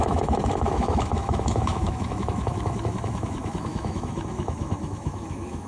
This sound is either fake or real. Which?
fake